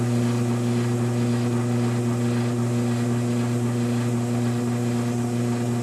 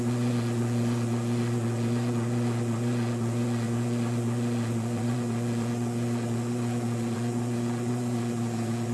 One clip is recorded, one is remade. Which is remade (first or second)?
second